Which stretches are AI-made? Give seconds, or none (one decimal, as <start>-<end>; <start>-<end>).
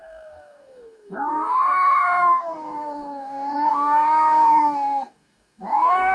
0.0-6.1